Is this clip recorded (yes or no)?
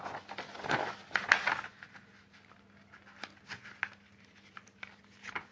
yes